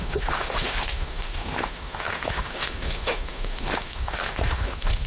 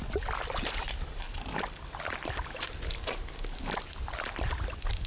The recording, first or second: second